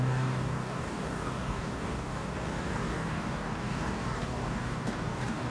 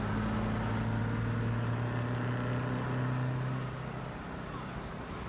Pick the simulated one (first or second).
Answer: first